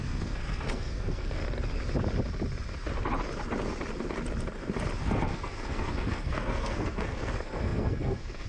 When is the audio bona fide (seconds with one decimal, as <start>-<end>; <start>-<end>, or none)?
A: 1.4-5.0